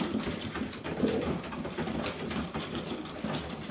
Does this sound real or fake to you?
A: real